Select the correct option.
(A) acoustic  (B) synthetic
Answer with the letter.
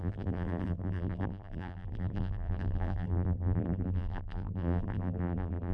B